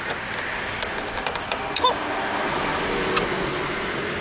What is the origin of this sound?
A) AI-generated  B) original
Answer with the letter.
B